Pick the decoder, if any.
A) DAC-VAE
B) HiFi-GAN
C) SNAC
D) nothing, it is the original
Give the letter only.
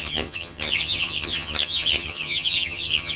B